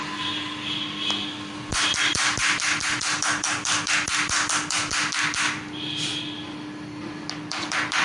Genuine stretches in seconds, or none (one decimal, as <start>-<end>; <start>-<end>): 0.0-8.0